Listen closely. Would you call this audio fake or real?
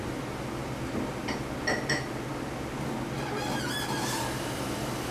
real